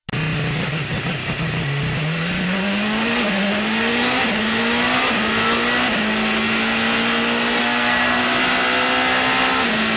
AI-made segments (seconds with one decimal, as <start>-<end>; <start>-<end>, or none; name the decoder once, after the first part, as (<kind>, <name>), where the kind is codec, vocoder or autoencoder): 7.6-8.2 (codec, SNAC)